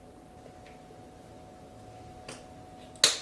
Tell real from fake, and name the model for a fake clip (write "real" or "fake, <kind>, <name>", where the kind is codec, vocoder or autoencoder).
real